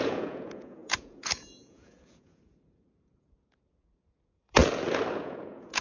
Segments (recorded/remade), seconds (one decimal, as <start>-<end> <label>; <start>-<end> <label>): 0.0-4.6 remade; 4.6-5.1 recorded; 5.1-5.8 remade